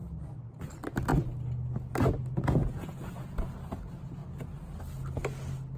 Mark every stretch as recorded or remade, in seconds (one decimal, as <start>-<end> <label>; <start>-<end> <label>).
0.0-2.6 recorded; 2.6-3.5 remade; 3.5-5.8 recorded